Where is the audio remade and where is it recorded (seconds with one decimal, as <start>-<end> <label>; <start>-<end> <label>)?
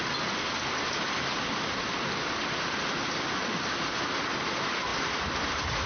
0.0-5.9 recorded